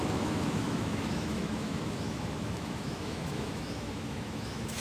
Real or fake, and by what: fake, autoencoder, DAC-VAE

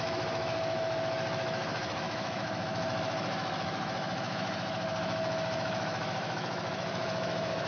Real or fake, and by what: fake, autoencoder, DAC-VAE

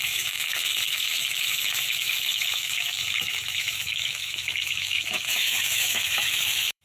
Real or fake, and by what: fake, autoencoder, DAC-VAE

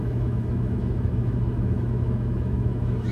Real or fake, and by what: fake, autoencoder, DAC-VAE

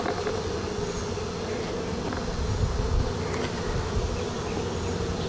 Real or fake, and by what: real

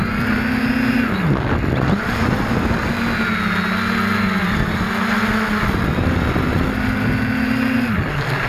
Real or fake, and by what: real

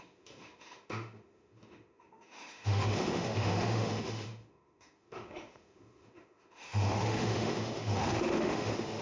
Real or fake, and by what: fake, autoencoder, DAC-VAE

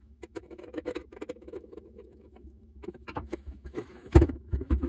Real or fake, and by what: fake, autoencoder, DAC-VAE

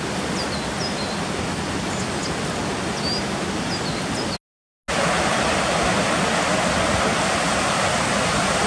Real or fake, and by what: real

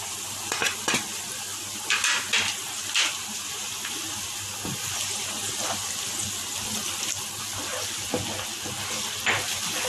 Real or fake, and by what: real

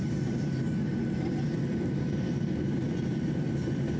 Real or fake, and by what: real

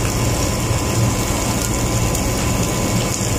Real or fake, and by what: real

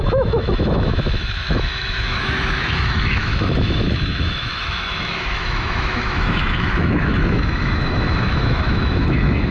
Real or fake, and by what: fake, autoencoder, DAC-VAE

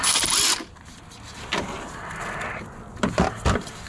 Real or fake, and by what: real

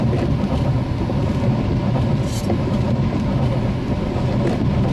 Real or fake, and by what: real